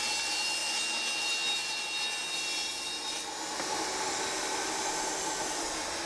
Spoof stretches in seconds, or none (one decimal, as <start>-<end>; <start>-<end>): none